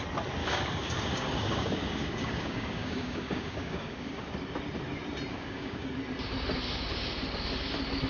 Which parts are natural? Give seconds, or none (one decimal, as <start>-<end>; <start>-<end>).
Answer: 0.0-0.4; 4.3-5.3; 5.9-8.1